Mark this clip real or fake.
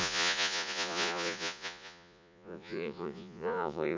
fake